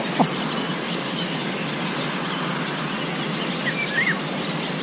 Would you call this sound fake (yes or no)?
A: no